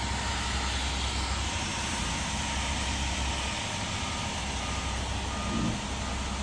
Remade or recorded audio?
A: recorded